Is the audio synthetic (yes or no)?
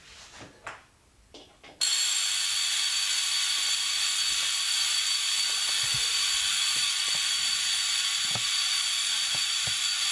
no